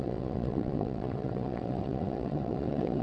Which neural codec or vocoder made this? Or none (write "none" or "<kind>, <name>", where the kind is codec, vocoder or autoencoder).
vocoder, WaveNeXt